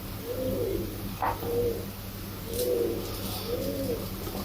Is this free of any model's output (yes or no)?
yes